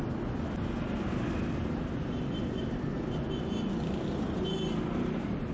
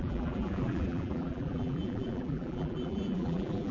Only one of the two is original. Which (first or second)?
first